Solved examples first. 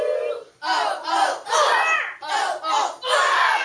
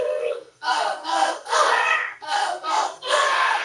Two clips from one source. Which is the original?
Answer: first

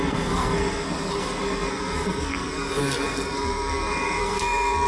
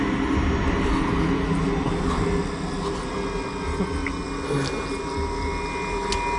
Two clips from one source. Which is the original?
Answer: second